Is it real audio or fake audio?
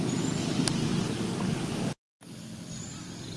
real